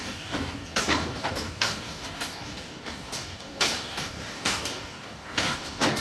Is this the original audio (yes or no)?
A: no